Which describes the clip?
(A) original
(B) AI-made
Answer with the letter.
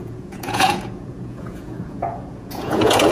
B